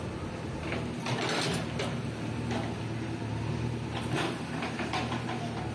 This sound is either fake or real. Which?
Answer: real